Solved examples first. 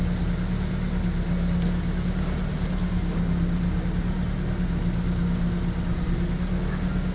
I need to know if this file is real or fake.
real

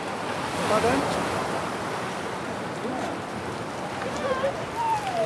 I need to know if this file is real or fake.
real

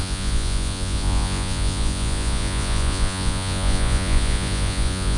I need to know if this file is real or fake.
fake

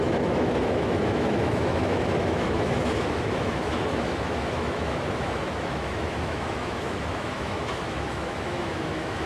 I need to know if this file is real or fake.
fake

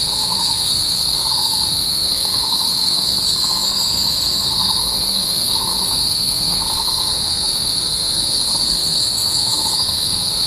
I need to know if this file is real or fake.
fake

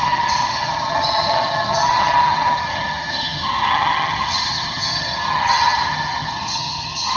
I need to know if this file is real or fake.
fake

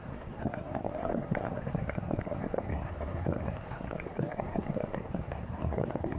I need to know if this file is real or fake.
fake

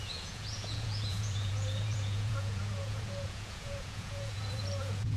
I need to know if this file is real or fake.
fake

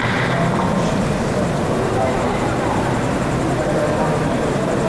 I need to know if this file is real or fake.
real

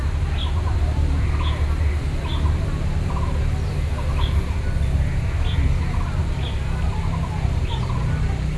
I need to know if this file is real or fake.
real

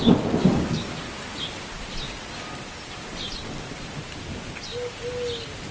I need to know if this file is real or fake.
real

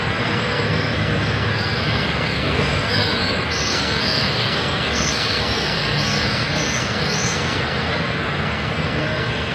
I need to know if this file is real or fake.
fake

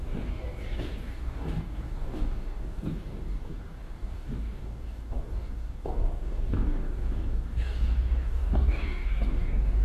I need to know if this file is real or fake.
fake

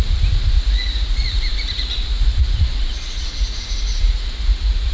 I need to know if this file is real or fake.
fake